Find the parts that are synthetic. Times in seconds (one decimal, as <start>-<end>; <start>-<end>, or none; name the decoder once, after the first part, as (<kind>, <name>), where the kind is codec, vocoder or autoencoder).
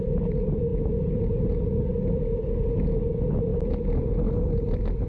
none